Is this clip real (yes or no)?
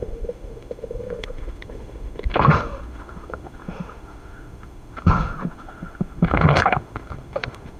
no